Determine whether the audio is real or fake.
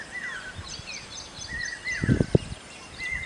real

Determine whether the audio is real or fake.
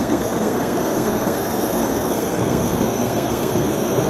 fake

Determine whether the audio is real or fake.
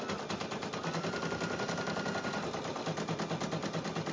real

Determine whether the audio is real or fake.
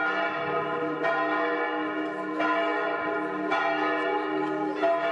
real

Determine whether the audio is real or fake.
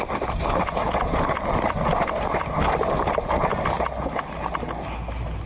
real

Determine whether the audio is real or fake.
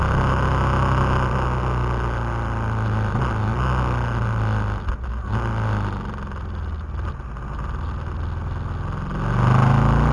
real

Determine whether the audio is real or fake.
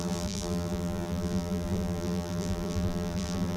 fake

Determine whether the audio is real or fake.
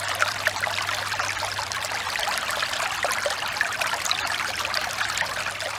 fake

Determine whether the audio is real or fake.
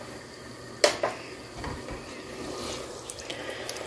real